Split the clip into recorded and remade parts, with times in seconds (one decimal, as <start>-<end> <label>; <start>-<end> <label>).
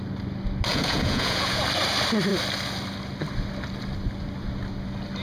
0.0-0.7 recorded; 0.7-1.6 remade; 1.6-5.2 recorded